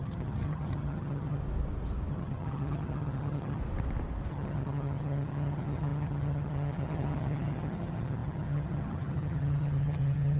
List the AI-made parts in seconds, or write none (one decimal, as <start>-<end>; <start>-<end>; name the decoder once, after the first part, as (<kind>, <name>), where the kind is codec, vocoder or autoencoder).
0.0-1.4 (vocoder, HiFi-GAN); 2.1-3.6; 4.3-10.4